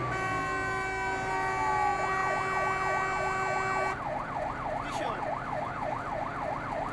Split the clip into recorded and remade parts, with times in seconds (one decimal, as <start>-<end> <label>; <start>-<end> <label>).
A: 0.0-6.9 recorded